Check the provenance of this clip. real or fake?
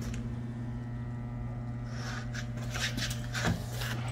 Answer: real